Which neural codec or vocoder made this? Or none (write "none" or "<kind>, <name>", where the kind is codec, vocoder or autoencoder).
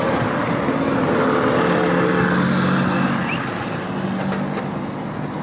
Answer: none